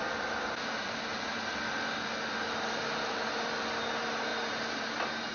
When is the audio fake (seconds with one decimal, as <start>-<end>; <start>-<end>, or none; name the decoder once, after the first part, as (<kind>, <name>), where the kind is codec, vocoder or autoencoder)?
none